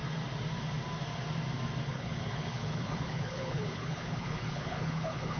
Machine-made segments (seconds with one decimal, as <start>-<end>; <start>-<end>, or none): 1.9-5.4

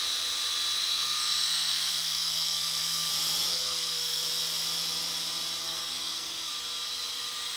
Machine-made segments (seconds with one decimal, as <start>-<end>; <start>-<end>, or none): 0.8-3.1; 3.5-4.2; 5.6-6.5

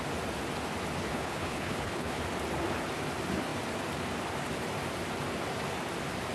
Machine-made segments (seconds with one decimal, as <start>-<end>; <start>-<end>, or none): 1.1-2.2

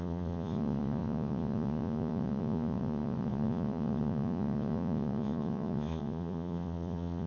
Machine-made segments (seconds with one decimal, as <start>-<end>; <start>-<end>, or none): 0.0-7.3

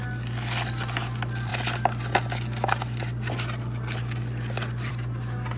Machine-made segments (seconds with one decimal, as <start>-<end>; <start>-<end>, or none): none

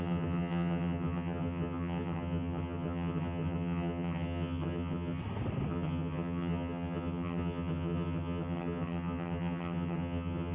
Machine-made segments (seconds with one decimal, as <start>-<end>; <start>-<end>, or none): 0.0-5.2; 5.7-10.5

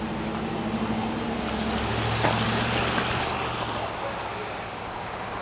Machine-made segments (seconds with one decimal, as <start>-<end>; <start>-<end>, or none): none